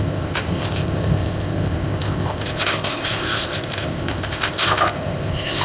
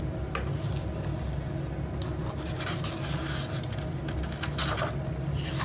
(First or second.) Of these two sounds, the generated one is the first